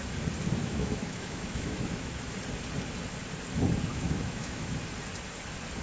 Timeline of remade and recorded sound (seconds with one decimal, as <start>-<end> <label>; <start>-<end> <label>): 0.0-0.6 recorded; 0.6-2.3 remade; 2.3-3.9 recorded; 3.9-4.8 remade; 4.8-5.8 recorded